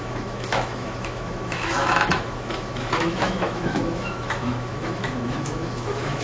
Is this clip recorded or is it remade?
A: remade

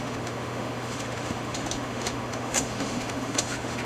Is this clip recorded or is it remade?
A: remade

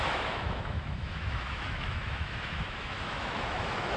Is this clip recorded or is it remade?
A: remade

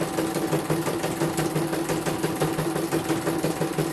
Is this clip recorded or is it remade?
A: recorded